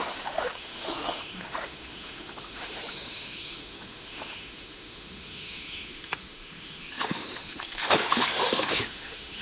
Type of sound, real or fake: fake